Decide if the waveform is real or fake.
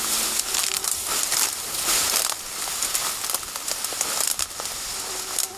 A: real